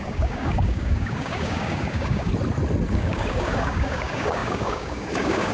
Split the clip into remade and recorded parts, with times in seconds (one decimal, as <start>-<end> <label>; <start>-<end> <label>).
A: 0.0-2.3 remade; 2.3-2.9 recorded; 2.9-5.5 remade